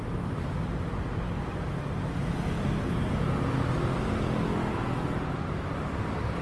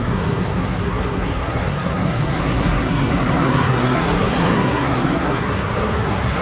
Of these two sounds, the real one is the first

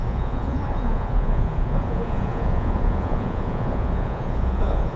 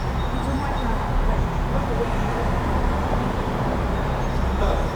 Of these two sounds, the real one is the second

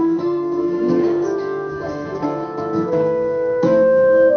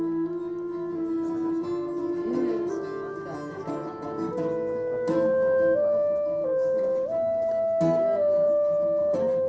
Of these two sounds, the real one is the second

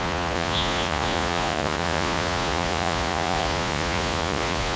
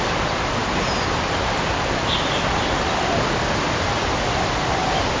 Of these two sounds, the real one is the second